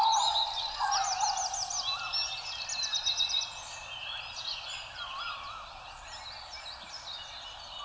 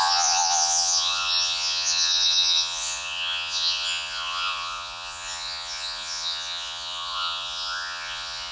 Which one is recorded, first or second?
first